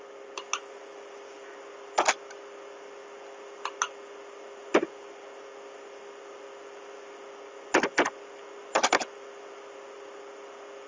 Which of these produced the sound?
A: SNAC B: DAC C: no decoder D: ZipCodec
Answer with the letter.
C